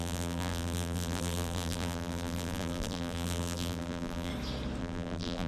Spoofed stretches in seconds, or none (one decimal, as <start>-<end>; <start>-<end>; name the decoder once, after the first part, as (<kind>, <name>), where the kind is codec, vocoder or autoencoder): 0.0-4.3 (vocoder, BigVGAN v2); 4.8-5.5